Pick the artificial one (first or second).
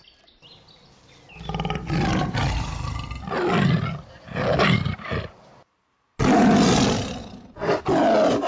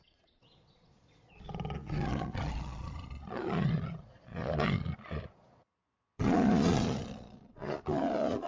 second